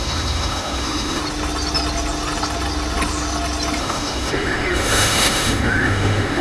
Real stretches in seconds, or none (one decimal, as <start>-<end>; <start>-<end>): 1.2-3.8

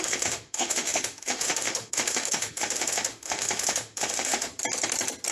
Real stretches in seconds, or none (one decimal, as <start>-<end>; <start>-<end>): 4.5-5.3

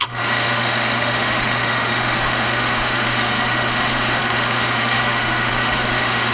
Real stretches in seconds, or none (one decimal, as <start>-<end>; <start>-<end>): none

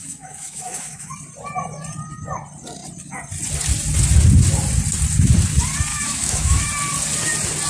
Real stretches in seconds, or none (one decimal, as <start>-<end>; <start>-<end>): 1.1-5.9; 6.7-7.7

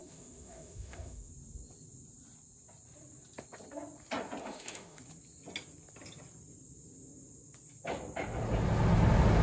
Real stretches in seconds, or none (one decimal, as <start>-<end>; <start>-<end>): 1.3-4.4; 5.0-9.4

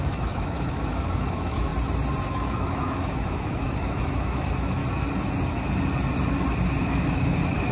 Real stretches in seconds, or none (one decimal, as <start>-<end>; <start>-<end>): 1.7-2.3; 4.8-6.8

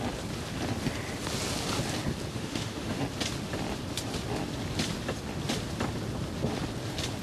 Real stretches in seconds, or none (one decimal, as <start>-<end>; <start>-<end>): 0.0-2.3; 3.0-7.2